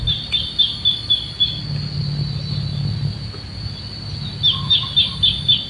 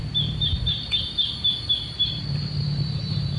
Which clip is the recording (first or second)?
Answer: first